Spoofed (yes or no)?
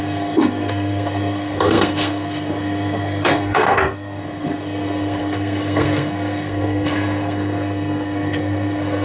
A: yes